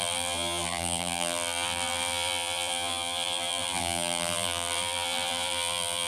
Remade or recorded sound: remade